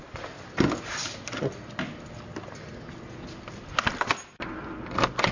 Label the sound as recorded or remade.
recorded